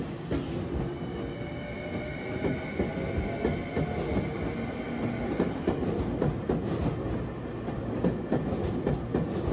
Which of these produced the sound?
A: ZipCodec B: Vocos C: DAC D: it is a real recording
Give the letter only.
D